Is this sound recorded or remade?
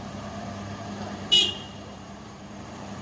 remade